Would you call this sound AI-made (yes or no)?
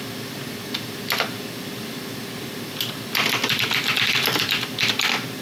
no